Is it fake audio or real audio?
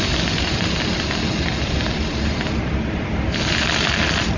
real